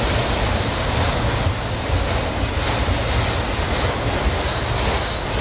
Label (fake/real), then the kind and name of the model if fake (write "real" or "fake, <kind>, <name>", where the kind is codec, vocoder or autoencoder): real